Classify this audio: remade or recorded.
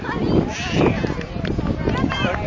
recorded